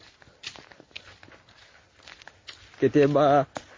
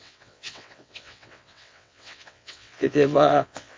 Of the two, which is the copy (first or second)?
second